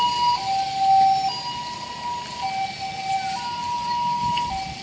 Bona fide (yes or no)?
yes